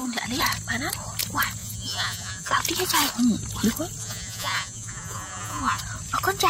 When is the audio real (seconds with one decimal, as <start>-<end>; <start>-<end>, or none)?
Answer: 0.0-1.6; 2.5-4.0; 5.8-6.5